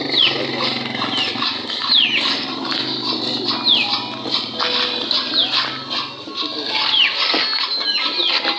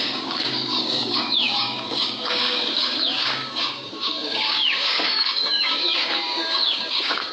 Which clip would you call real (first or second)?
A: first